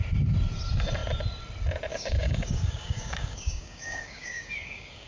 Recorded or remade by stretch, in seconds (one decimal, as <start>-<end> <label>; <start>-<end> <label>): 0.0-1.9 recorded; 1.9-5.1 remade